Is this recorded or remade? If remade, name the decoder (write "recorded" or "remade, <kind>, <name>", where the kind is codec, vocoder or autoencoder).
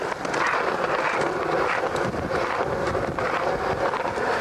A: recorded